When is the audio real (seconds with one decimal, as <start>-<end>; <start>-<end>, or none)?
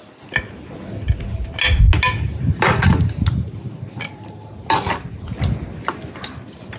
0.0-6.8